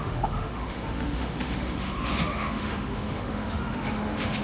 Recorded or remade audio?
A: remade